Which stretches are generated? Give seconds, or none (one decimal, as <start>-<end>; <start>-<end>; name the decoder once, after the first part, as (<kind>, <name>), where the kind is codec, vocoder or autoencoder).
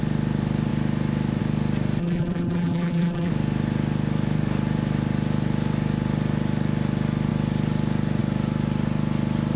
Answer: 2.0-3.3 (vocoder, BigVGAN v2)